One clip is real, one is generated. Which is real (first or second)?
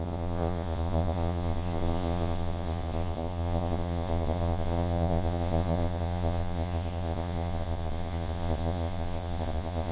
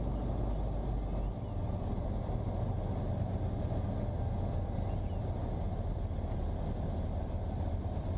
second